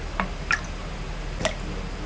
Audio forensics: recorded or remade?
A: recorded